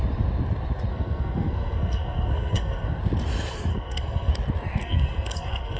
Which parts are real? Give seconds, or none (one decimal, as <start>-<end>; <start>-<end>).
0.0-0.9; 3.0-3.7; 4.3-4.8